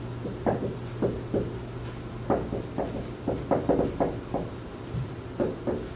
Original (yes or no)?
yes